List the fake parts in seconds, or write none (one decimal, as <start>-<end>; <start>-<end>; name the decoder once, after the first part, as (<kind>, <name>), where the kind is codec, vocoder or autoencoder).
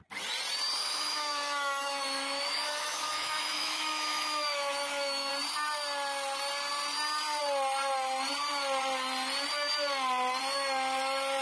0.8-5.3 (autoencoder, DAC-VAE)